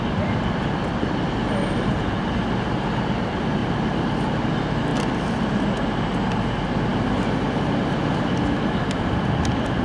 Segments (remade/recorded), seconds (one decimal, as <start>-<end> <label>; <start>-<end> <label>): 0.0-3.6 recorded; 3.6-4.5 remade; 4.5-9.8 recorded